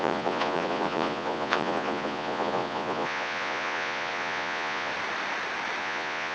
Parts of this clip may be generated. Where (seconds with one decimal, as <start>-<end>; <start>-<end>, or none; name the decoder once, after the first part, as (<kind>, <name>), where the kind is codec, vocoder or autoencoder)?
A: 0.0-4.9 (vocoder, Vocos); 5.8-6.3

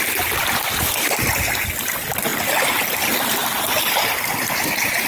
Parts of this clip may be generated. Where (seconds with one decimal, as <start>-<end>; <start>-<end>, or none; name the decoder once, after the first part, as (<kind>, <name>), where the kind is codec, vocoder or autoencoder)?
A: none